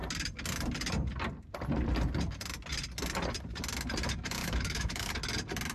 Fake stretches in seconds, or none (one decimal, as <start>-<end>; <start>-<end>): 4.4-5.1